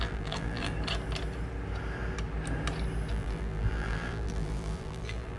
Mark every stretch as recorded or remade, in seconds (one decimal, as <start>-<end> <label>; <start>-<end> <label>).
0.0-0.7 remade; 0.7-3.1 recorded; 3.1-5.4 remade